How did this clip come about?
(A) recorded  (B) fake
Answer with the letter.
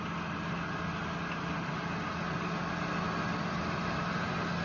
A